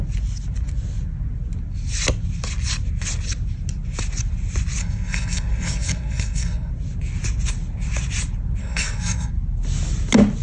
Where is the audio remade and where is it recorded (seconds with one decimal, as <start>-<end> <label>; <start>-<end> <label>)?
0.0-4.8 recorded; 4.8-6.7 remade; 6.7-8.6 recorded; 8.6-9.3 remade; 9.3-10.4 recorded

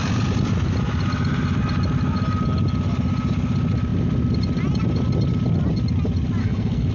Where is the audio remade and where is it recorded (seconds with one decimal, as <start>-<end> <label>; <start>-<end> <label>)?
0.0-6.4 recorded; 6.4-6.9 remade

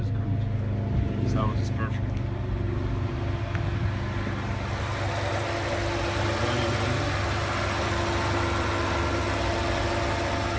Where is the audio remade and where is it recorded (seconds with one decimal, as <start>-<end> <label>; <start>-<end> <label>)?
0.0-10.6 recorded

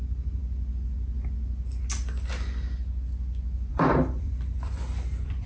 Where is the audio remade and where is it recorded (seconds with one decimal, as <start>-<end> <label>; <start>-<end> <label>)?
0.0-0.4 remade; 0.4-3.7 recorded; 3.7-5.5 remade

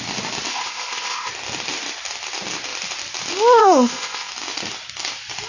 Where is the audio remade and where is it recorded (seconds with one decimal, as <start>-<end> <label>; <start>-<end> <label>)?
0.0-0.5 recorded; 0.5-1.3 remade; 1.3-3.6 recorded; 3.6-4.3 remade; 4.3-5.5 recorded